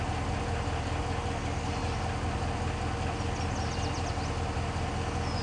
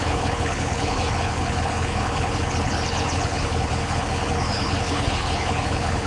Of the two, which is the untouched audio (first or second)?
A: first